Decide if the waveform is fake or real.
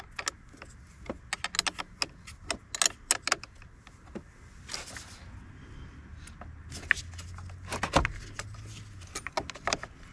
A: real